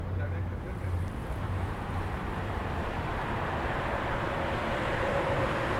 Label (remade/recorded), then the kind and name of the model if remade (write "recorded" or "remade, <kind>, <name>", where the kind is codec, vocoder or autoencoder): remade, vocoder, BigVGAN v2